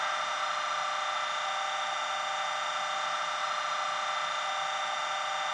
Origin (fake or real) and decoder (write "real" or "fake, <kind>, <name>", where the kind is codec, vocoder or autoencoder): real